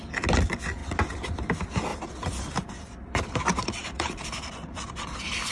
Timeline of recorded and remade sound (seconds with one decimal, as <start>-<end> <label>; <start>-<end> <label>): 0.0-1.9 recorded; 1.9-5.5 remade